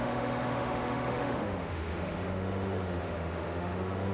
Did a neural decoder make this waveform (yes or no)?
yes